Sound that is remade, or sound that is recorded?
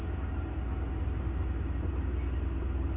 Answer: recorded